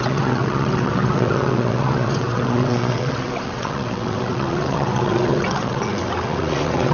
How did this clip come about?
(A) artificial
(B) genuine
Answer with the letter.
A